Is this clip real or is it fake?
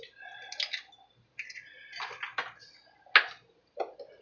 real